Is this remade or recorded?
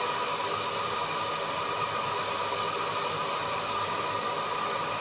recorded